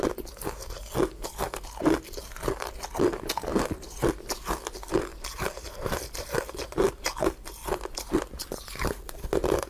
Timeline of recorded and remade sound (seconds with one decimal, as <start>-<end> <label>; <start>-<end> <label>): 0.0-3.5 recorded; 3.5-4.1 remade; 4.1-5.1 recorded; 5.1-9.7 remade